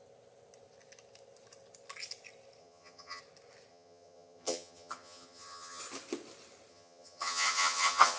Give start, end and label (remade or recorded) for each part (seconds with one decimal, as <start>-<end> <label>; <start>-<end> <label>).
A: 0.0-2.6 recorded; 2.6-3.2 remade; 3.2-3.7 recorded; 3.7-5.8 remade; 5.8-6.7 recorded; 6.7-8.2 remade